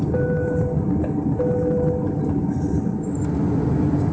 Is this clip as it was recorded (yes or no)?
yes